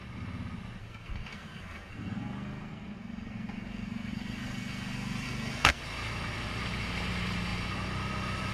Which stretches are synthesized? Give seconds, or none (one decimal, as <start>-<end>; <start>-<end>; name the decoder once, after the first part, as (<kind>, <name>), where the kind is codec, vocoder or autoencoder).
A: 0.8-5.8 (codec, SNAC)